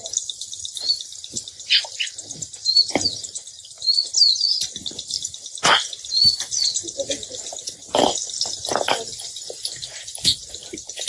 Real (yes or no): yes